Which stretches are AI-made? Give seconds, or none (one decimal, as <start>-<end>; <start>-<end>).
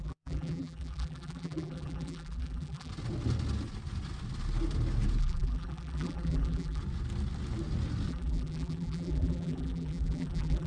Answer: 0.0-2.9; 5.2-6.8; 8.1-10.7